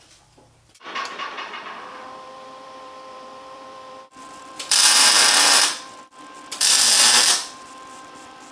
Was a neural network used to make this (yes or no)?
yes